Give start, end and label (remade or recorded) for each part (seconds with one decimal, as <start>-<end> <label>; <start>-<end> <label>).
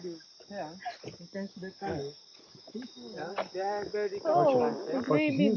0.0-1.3 recorded; 1.3-3.5 remade; 3.5-5.6 recorded